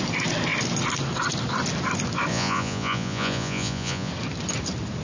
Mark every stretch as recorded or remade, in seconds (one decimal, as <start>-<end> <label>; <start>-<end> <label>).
0.0-2.3 recorded; 2.3-4.1 remade; 4.1-5.0 recorded